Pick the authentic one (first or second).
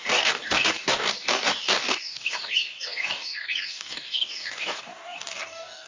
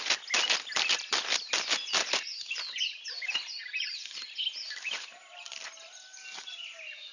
second